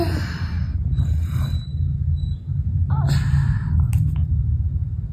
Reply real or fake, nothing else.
real